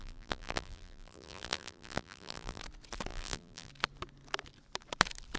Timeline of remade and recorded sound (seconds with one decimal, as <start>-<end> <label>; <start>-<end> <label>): 0.0-2.6 remade; 2.6-3.1 recorded; 3.1-3.7 remade; 3.7-5.4 recorded